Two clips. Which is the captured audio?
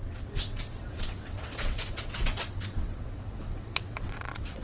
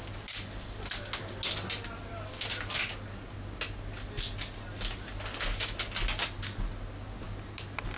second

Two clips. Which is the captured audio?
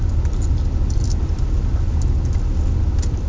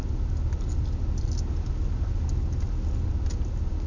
second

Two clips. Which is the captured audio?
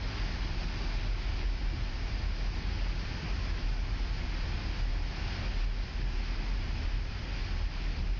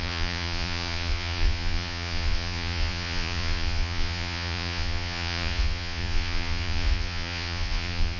first